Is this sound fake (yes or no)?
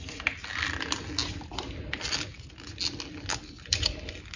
no